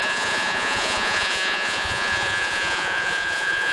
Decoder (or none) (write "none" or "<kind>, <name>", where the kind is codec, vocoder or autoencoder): vocoder, Vocos